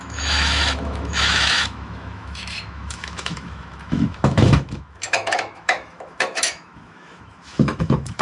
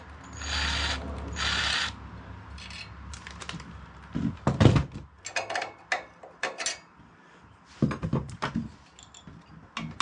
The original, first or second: second